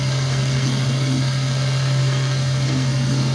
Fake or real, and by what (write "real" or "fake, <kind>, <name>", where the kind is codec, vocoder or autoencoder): fake, codec, SNAC